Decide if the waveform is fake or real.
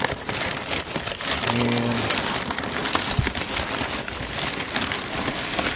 real